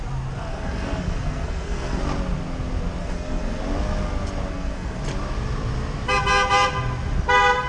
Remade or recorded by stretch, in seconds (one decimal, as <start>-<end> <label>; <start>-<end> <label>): 0.0-0.5 recorded; 0.5-2.0 remade; 2.0-3.0 recorded; 3.0-3.6 remade; 3.6-4.5 recorded; 4.5-5.0 remade; 5.0-7.7 recorded